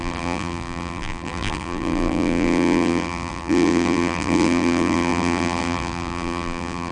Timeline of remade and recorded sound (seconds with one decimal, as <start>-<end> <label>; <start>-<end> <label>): 0.0-6.9 remade